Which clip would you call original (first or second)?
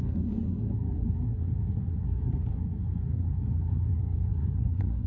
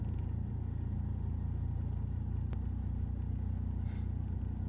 second